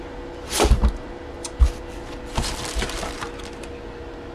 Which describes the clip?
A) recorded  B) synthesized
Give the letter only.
B